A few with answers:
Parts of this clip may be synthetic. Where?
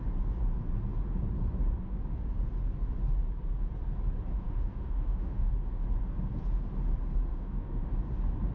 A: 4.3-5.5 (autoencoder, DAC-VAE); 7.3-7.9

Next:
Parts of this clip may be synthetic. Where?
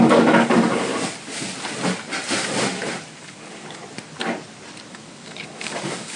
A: 0.0-0.9 (codec, DAC); 3.2-3.8; 4.9-6.2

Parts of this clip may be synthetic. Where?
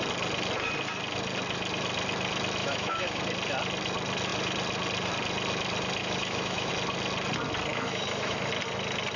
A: 2.6-3.2 (autoencoder, DAC-VAE); 6.0-6.7; 7.7-8.5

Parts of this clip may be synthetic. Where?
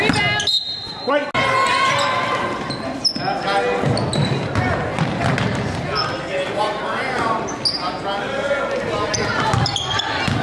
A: none